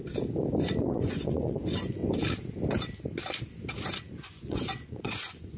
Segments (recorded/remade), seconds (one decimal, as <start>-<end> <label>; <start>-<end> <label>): 0.0-0.7 recorded; 0.7-2.0 remade; 2.0-4.1 recorded; 4.1-5.6 remade